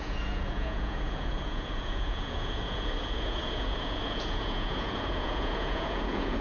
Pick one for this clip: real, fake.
fake